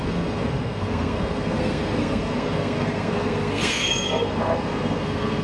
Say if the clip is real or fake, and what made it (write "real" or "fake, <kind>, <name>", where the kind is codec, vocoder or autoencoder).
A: fake, codec, SNAC